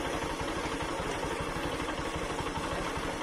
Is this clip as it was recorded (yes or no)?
yes